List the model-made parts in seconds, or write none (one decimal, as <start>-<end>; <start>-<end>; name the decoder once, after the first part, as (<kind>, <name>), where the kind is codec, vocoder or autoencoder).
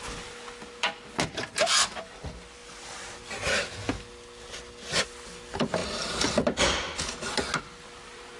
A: none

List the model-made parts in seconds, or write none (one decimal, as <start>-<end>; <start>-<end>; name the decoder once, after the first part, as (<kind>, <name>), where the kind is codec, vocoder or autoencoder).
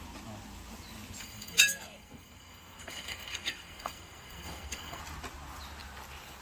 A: 1.2-5.0 (codec, SNAC)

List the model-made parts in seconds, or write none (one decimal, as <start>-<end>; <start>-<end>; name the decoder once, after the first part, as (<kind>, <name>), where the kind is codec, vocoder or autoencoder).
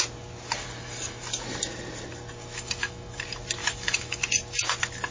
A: 2.4-3.2 (autoencoder, DAC-VAE); 3.6-4.2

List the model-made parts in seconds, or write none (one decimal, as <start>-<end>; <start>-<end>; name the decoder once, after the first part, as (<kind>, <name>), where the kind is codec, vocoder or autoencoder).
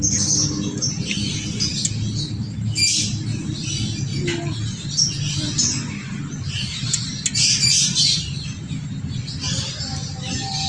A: none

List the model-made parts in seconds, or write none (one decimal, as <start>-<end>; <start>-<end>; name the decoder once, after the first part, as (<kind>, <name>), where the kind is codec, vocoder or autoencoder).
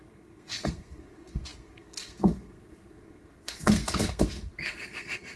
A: 0.0-5.4 (codec, SNAC)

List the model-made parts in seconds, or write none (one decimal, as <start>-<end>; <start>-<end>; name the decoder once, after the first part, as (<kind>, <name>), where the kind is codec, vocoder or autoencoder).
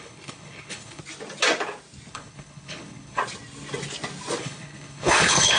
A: 0.0-1.0 (codec, HILCodec); 2.1-3.2; 4.4-5.6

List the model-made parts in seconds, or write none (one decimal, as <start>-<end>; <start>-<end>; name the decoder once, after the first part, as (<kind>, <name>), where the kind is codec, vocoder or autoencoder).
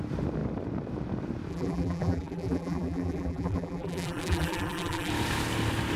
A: 1.5-5.1 (vocoder, BigVGAN v2)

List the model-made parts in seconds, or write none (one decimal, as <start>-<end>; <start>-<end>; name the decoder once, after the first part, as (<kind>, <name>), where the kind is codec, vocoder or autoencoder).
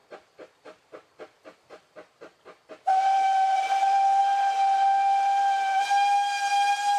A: none